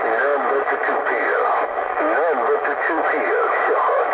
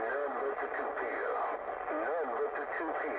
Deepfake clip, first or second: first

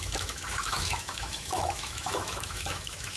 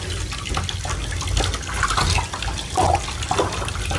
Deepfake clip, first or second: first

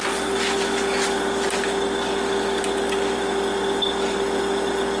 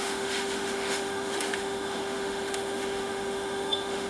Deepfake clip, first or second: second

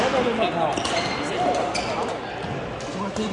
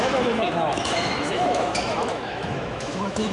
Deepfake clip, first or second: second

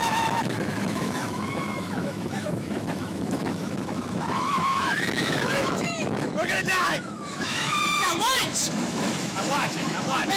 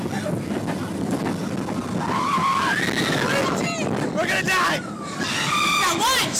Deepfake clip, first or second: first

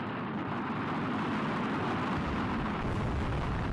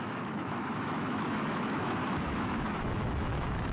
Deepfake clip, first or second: second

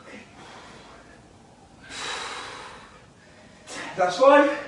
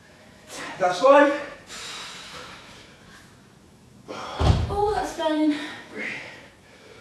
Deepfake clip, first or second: second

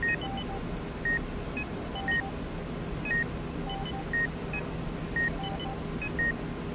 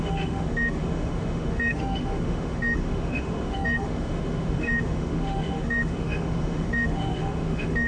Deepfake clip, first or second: second